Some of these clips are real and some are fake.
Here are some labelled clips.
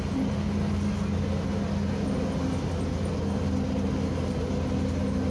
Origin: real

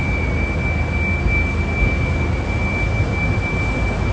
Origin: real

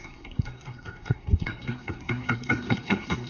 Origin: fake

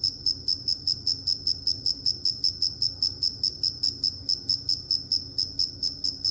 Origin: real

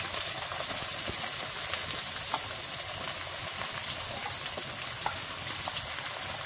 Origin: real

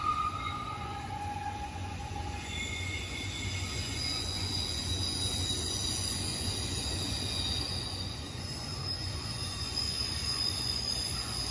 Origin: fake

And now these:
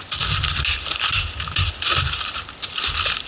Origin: real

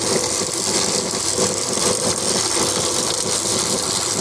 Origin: real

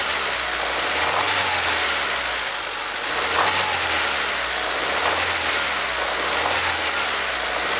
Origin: real